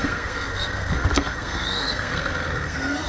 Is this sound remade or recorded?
remade